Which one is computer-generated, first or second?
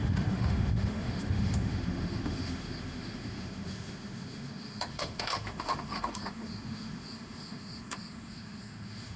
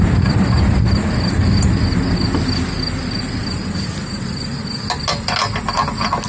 first